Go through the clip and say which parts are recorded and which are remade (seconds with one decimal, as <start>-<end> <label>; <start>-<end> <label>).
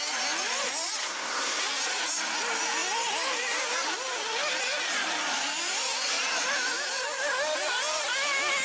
0.0-1.0 recorded; 1.0-1.6 remade; 1.6-8.6 recorded